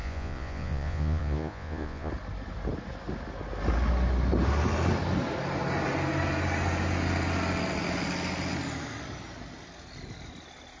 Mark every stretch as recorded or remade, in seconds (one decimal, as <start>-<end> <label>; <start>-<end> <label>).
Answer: 0.0-2.1 remade; 2.1-10.8 recorded